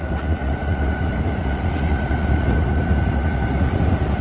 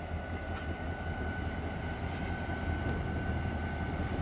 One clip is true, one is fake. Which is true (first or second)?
second